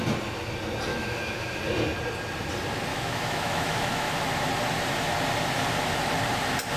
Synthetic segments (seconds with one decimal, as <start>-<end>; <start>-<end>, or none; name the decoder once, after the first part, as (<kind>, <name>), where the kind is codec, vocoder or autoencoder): 0.9-1.6 (autoencoder, DAC-VAE); 2.9-4.3